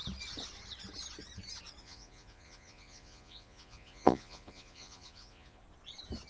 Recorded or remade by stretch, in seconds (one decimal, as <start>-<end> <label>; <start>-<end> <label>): 0.0-1.8 recorded; 1.8-5.6 remade; 5.6-6.3 recorded